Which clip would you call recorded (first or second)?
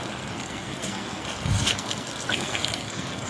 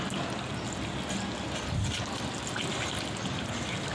second